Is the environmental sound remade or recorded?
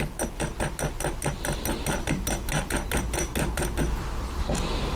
recorded